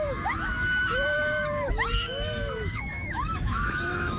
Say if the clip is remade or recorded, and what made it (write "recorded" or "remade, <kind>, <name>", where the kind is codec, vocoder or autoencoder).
remade, autoencoder, DAC-VAE